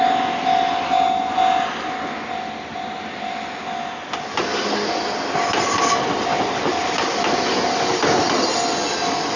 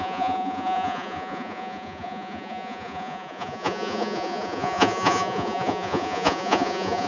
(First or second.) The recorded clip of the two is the first